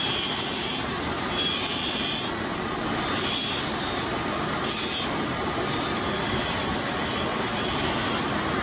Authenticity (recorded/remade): remade